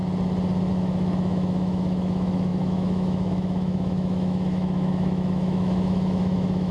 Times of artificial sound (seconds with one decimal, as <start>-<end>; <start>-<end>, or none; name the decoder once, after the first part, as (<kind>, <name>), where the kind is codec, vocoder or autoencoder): 0.7-6.7 (autoencoder, DAC-VAE)